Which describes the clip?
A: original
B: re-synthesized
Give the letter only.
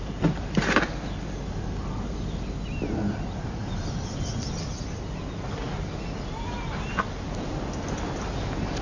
A